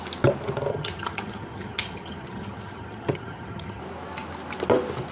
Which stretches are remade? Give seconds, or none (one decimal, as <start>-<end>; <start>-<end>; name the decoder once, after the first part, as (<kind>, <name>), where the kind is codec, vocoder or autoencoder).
0.7-3.8 (vocoder, HiFi-GAN)